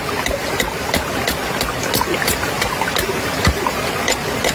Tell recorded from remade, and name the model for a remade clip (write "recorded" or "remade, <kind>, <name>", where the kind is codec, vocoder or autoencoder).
recorded